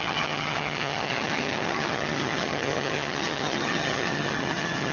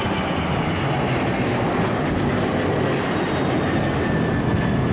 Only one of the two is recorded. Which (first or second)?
second